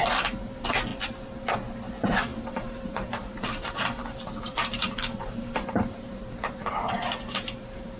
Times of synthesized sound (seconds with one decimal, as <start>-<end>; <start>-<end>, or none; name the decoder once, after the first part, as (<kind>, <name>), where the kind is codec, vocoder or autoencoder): 0.0-0.9 (vocoder, BigVGAN v2); 1.9-8.0